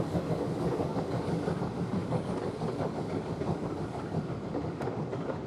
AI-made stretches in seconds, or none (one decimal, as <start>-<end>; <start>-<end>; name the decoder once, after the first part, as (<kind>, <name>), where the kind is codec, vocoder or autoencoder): 0.0-5.5 (codec, DAC)